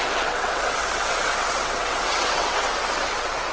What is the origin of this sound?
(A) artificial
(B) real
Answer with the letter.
A